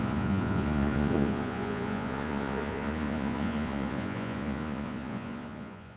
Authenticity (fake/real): fake